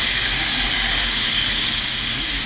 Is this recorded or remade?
remade